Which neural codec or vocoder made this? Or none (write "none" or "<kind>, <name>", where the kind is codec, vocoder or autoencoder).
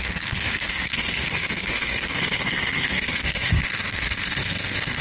codec, SNAC